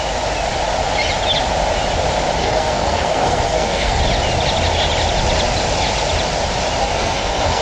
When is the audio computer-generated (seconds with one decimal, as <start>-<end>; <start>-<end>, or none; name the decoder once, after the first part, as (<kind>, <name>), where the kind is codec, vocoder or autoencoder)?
2.4-4.0 (codec, SNAC); 6.8-7.6